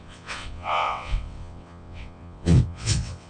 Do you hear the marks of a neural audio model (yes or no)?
yes